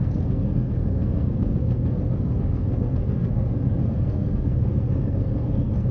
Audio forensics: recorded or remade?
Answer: remade